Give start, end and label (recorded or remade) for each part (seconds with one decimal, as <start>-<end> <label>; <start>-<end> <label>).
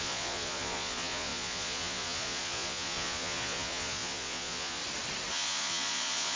0.0-4.8 remade; 4.8-5.3 recorded; 5.3-6.4 remade